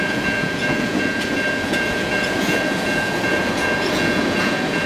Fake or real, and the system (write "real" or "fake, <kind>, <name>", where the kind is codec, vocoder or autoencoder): fake, vocoder, Vocos